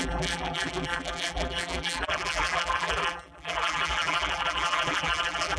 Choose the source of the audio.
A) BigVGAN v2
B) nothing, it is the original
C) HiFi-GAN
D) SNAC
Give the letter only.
A